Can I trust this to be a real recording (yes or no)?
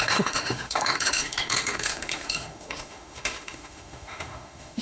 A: no